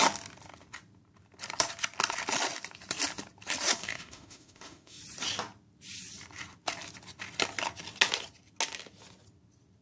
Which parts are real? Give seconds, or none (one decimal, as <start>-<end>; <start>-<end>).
0.0-3.8; 5.0-9.8